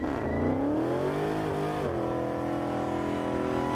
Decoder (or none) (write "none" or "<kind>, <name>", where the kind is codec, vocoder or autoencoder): none